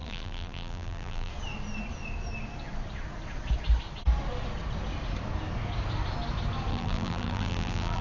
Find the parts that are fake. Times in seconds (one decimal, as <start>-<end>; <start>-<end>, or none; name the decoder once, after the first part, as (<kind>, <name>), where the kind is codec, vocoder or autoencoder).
0.0-1.3 (vocoder, BigVGAN v2); 6.7-8.0